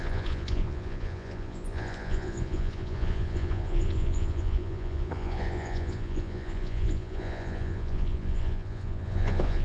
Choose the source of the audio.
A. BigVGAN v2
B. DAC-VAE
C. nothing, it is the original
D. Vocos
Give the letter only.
D